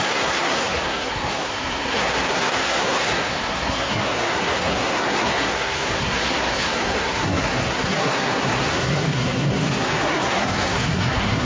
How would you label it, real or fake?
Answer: fake